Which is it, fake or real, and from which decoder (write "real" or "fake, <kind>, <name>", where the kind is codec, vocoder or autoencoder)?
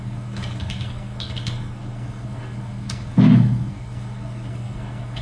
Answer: fake, codec, SNAC